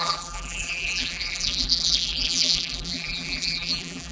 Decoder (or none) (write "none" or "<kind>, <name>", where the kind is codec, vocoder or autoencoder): vocoder, BigVGAN v2